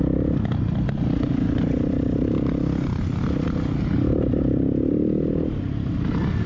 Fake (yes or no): no